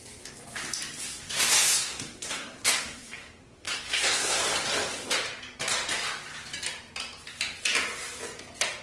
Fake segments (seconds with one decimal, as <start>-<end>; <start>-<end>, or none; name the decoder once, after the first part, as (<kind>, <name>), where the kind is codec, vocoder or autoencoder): 1.0-4.4 (codec, SNAC)